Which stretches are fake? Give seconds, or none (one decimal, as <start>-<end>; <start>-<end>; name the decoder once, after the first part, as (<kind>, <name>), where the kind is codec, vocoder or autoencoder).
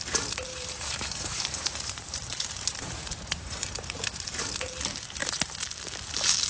0.5-4.4 (vocoder, BigVGAN v2)